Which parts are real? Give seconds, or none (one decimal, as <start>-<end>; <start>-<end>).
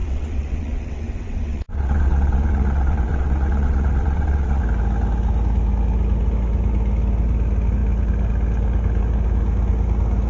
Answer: 4.6-10.3